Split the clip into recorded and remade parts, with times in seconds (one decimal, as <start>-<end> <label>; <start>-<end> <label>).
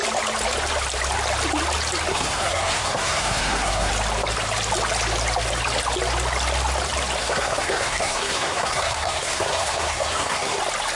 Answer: 0.0-2.1 recorded; 2.1-3.9 remade; 3.9-7.2 recorded; 7.2-10.6 remade; 10.6-11.0 recorded